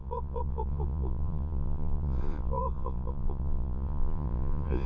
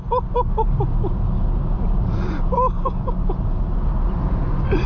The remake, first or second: first